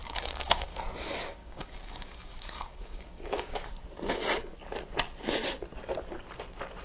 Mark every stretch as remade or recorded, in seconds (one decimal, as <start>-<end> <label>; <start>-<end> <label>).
0.0-0.8 remade; 0.8-1.4 recorded; 1.4-3.5 remade; 3.5-6.8 recorded